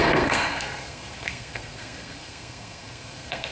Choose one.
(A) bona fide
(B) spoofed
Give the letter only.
B